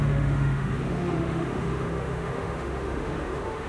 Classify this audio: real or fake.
fake